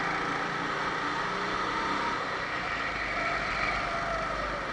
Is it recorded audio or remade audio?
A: recorded